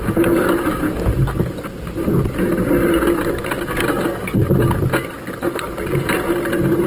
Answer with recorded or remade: recorded